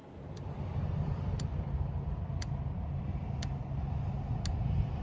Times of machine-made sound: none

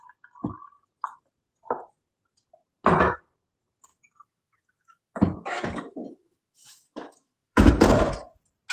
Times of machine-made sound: 3.9-7.7 (autoencoder, DAC-VAE)

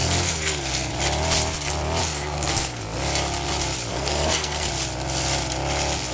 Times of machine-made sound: 0.0-0.9 (codec, SNAC); 2.0-2.8; 3.9-4.7

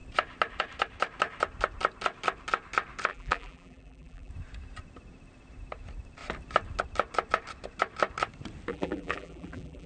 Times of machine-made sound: 3.1-4.3 (vocoder, BigVGAN v2); 8.7-9.9

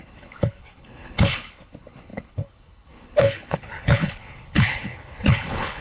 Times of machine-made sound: 0.0-5.8 (codec, HILCodec)